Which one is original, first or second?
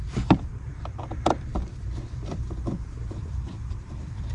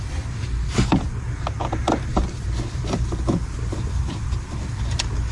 second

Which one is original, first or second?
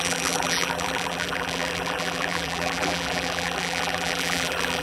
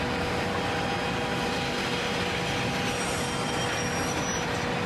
second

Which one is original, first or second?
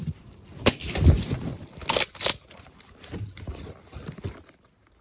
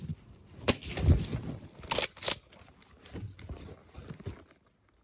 second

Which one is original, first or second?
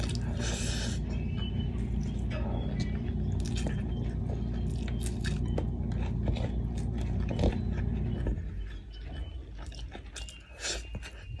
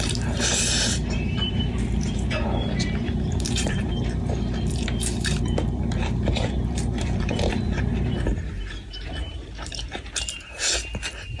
first